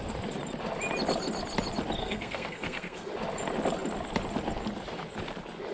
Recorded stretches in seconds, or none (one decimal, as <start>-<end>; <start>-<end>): 0.0-2.0; 3.1-5.7